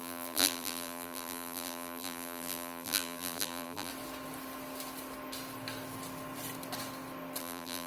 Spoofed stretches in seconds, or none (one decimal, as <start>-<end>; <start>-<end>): 0.0-3.9; 7.4-7.9